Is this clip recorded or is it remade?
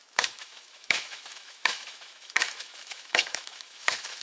remade